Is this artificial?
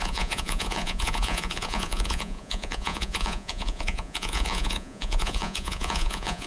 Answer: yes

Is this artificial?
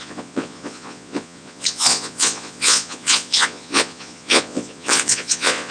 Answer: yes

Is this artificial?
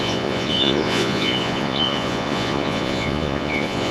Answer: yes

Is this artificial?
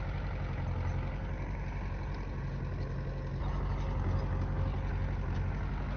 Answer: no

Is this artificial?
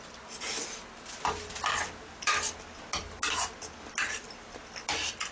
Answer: no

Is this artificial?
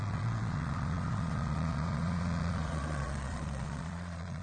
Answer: yes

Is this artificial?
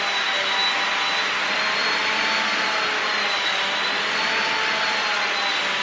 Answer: no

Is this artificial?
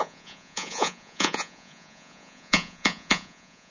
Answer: yes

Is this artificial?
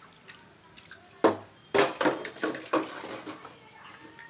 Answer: no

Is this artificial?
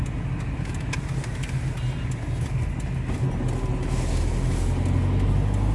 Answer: no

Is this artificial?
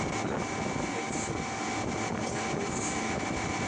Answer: no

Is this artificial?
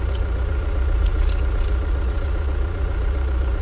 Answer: yes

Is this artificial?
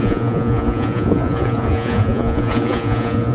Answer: yes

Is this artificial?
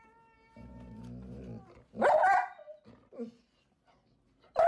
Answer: no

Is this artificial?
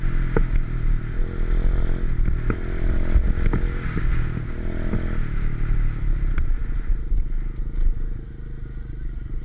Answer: no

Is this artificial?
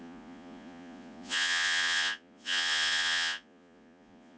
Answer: yes